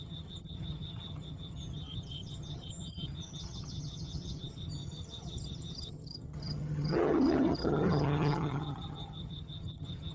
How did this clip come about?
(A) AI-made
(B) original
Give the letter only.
A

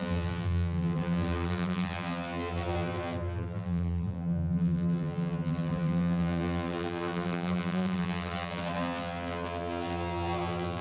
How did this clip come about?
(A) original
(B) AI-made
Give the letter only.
B